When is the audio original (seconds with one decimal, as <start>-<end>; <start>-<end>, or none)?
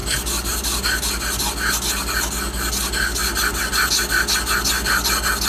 0.0-3.2; 3.9-5.5